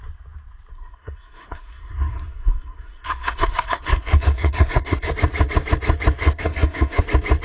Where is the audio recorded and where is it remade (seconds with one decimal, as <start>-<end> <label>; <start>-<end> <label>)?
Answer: 0.0-0.7 recorded; 0.7-5.1 remade; 5.1-6.2 recorded; 6.2-7.0 remade; 7.0-7.4 recorded